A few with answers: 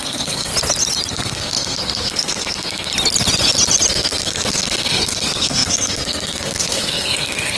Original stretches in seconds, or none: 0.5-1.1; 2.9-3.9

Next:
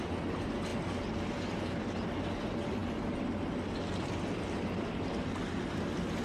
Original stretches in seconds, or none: 0.0-6.2

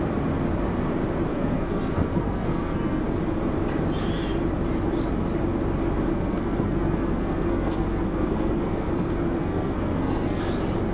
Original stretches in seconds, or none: 0.0-1.3; 3.0-6.1; 10.4-10.9

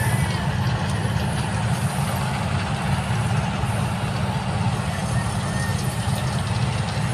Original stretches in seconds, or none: 0.0-7.1

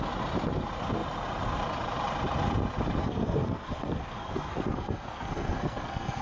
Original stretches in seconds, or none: 0.0-3.0

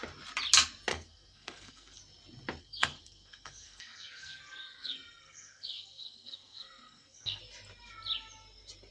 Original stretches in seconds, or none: 0.0-0.9; 2.0-2.6; 7.4-8.9

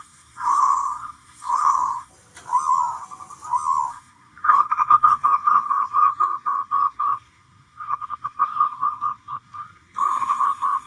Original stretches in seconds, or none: 2.1-3.9